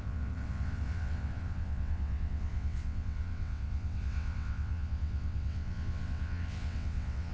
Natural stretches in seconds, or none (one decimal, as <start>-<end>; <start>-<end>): none